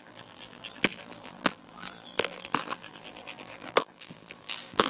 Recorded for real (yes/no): no